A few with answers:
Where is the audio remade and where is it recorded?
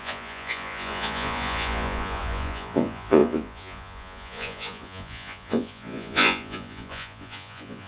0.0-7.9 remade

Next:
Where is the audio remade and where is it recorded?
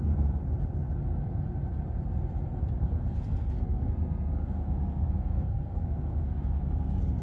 0.0-0.4 remade; 0.4-2.7 recorded; 2.7-7.2 remade